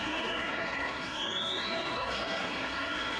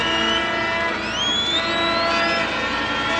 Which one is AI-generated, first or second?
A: first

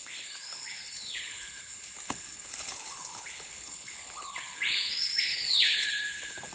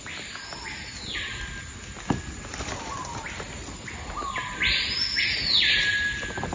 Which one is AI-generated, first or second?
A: first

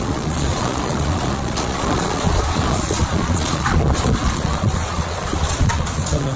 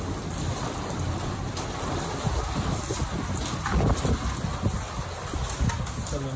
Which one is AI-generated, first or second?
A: first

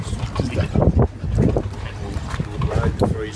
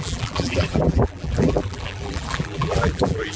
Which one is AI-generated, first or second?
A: second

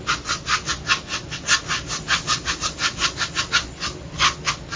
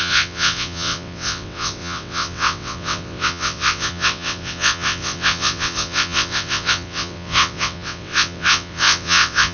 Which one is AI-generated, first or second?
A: second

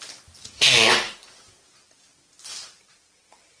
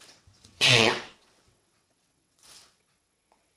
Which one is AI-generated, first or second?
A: second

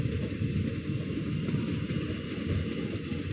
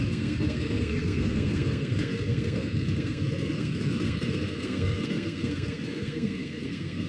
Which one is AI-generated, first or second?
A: second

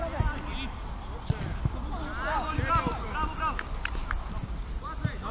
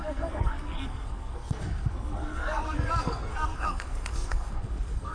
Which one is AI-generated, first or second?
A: second